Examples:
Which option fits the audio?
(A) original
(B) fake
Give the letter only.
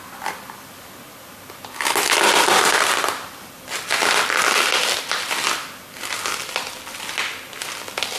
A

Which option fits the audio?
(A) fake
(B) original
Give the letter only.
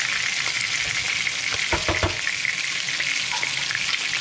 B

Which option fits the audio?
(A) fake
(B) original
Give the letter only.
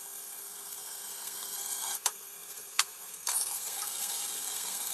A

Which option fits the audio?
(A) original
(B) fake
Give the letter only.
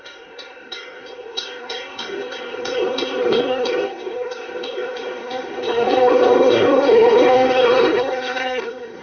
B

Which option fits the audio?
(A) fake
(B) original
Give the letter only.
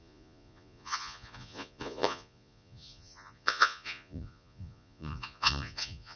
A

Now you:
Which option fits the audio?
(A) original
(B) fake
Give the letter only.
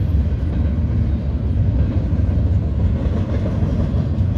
A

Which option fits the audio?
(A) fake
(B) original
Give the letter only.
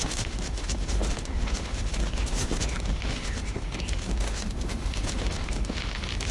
A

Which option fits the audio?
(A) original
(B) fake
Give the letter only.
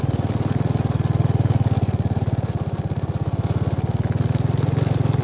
A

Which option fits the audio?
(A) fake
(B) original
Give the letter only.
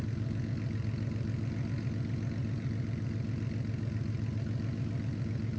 B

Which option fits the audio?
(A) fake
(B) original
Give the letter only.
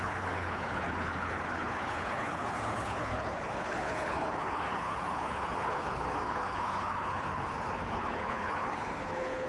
A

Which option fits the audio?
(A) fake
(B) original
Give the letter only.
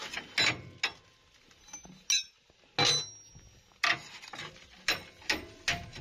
B